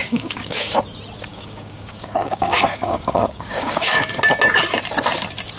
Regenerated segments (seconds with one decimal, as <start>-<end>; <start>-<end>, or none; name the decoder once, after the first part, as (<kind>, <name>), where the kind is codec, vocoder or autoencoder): 0.0-0.8 (codec, DAC); 1.3-4.2